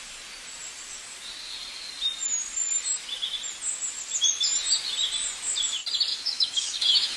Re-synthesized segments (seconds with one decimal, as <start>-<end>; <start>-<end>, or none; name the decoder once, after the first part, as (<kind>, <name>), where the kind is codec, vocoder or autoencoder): 6.1-7.2 (autoencoder, DAC-VAE)